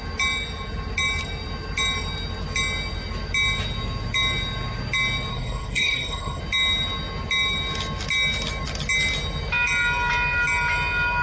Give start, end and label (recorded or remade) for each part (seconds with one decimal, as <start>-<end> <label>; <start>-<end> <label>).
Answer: 0.0-5.3 recorded; 5.3-6.4 remade; 6.4-11.2 recorded